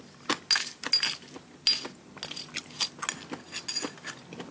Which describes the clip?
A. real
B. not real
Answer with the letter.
A